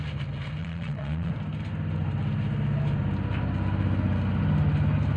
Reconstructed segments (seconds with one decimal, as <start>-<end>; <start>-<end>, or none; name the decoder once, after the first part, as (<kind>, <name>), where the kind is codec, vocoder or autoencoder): 0.6-1.3 (vocoder, Vocos)